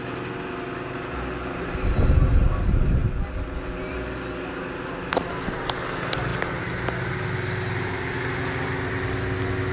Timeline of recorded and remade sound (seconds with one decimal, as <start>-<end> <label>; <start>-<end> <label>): 0.0-9.7 recorded